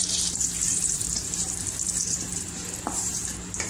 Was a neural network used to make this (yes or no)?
yes